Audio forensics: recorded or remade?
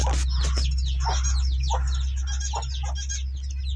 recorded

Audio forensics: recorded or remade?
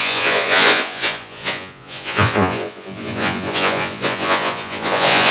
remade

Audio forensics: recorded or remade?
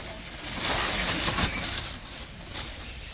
recorded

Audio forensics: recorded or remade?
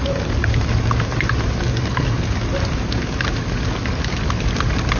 recorded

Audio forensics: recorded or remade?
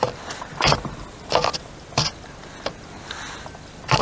recorded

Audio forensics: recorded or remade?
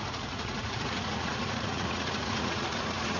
remade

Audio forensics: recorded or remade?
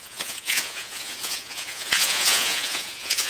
remade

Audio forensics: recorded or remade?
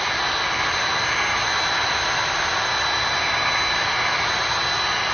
recorded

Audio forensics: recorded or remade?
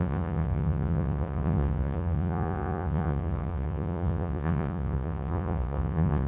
remade